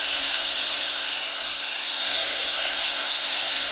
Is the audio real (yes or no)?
no